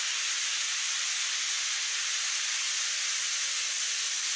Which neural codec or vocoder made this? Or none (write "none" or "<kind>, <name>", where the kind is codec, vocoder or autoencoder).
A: none